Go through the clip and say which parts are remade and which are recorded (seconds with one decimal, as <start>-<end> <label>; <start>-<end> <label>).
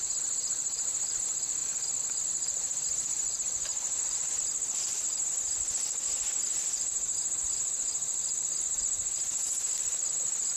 0.0-1.6 remade; 1.6-2.2 recorded; 2.2-10.6 remade